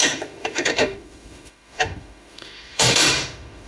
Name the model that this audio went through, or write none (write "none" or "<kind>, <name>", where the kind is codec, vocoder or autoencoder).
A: autoencoder, DAC-VAE